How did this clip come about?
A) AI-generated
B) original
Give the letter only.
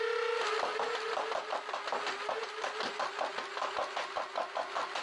B